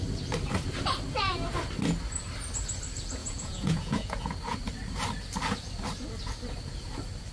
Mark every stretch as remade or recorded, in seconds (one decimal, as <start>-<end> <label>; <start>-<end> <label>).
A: 0.0-3.2 recorded; 3.2-4.3 remade; 4.3-7.3 recorded